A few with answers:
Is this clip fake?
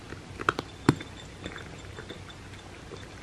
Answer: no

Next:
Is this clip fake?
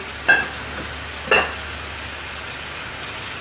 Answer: no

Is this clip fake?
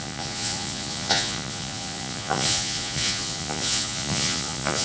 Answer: yes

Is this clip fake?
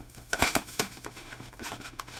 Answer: yes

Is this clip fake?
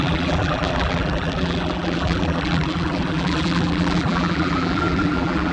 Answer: yes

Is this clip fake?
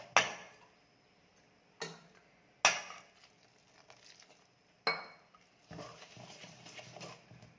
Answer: no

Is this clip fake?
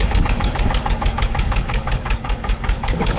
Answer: yes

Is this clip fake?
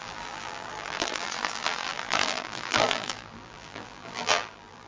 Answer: yes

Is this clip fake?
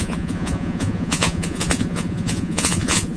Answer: yes